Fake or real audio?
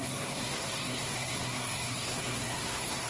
fake